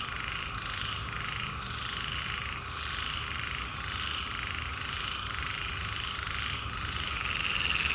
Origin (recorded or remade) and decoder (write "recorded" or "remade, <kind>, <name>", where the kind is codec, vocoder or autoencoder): recorded